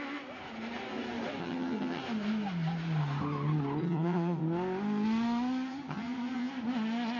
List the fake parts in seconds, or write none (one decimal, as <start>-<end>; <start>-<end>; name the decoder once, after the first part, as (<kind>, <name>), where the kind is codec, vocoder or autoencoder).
1.4-2.0 (vocoder, HiFi-GAN); 3.8-4.4; 5.7-6.5